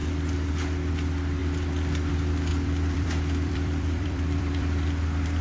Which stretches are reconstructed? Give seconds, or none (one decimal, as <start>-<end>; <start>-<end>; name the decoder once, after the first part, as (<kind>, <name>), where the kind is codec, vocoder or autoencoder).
2.5-5.4 (vocoder, BigVGAN v2)